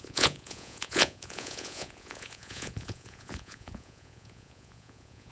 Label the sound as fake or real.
fake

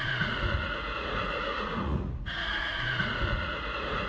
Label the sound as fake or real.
fake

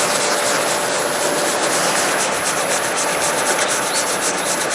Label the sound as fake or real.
real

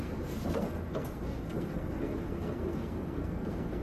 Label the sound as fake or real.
fake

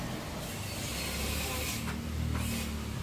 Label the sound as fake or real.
real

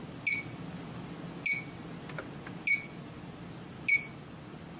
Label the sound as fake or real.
real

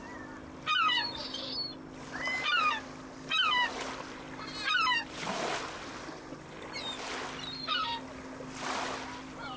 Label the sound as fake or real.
real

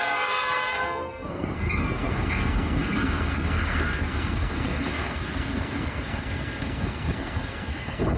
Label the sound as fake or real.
fake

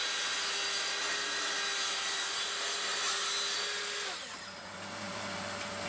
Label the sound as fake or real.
real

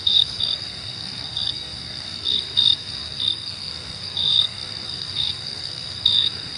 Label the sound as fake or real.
fake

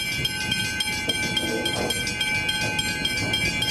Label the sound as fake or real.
real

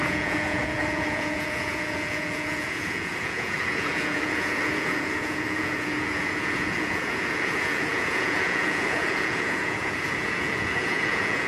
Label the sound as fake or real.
fake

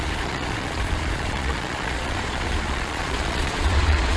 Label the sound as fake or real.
fake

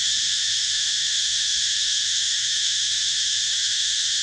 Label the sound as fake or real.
fake